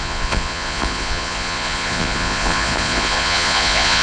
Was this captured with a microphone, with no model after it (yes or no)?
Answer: no